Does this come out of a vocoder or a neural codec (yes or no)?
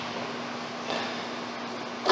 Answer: no